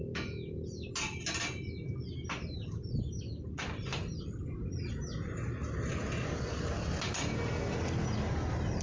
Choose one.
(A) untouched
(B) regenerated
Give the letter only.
A